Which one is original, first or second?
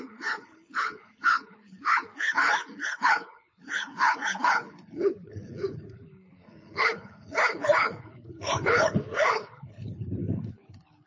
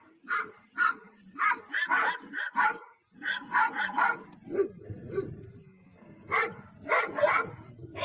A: second